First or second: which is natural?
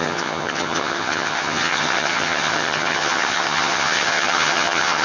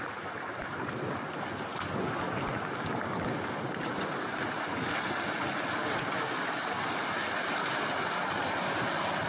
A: second